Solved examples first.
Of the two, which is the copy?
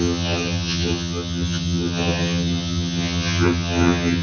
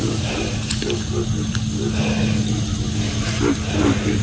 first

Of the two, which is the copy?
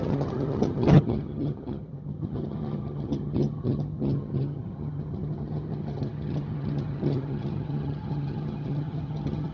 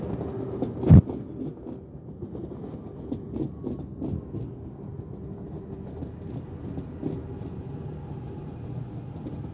first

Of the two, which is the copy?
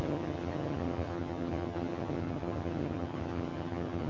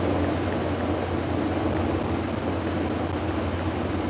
first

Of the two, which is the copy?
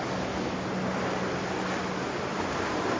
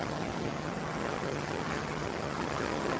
second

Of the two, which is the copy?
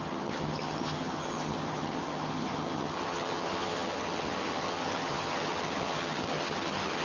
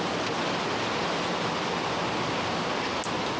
first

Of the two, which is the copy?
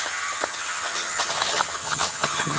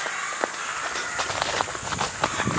first